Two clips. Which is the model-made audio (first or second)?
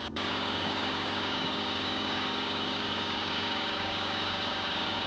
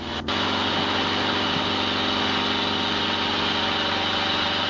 first